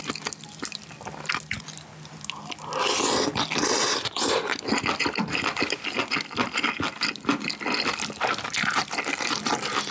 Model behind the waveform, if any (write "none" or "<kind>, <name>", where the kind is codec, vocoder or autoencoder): none